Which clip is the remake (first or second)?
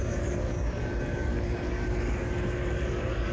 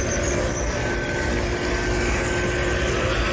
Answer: first